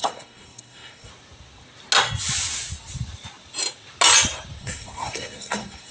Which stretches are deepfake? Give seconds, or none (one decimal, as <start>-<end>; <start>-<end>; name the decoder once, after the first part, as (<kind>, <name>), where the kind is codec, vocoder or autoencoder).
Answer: 0.0-1.1 (codec, SNAC); 4.6-5.9